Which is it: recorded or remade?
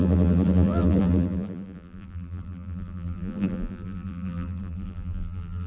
remade